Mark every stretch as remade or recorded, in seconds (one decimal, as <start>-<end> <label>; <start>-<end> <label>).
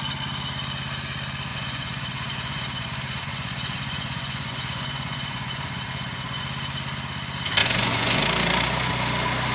0.0-1.5 recorded; 1.5-6.4 remade; 6.4-7.6 recorded; 7.6-8.2 remade; 8.2-9.5 recorded